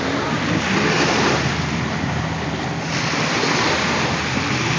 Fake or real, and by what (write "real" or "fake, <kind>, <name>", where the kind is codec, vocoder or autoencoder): real